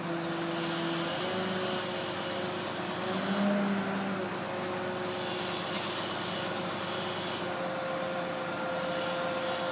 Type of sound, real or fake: real